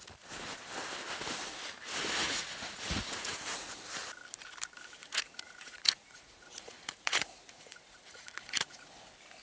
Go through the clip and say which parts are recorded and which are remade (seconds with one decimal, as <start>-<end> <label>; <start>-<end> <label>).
0.0-2.2 recorded; 2.2-3.7 remade; 3.7-5.0 recorded; 5.0-8.9 remade; 8.9-9.4 recorded